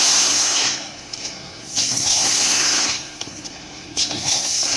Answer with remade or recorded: remade